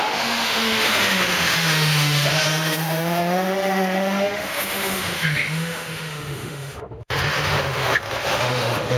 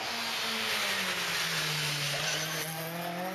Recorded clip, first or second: second